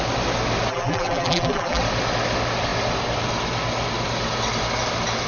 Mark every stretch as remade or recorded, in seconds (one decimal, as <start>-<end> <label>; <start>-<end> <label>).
0.0-0.7 recorded; 0.7-1.8 remade; 1.8-5.3 recorded